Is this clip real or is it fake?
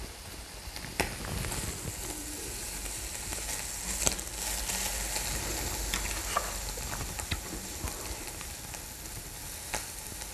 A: real